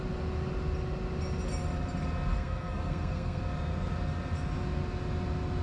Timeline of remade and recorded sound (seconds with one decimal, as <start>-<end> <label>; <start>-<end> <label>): 0.0-2.3 recorded; 2.3-3.4 remade; 3.4-5.6 recorded

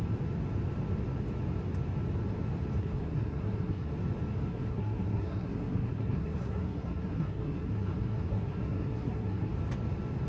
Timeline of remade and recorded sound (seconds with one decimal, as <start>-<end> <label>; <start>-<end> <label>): 0.0-2.8 recorded; 2.8-3.9 remade; 3.9-4.5 recorded; 4.5-9.5 remade; 9.5-10.3 recorded